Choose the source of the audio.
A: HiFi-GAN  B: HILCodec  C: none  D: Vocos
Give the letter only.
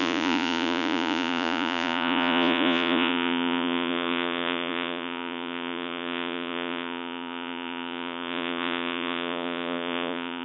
D